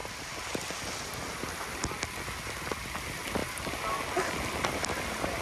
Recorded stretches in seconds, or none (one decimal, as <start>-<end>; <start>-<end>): 0.0-5.4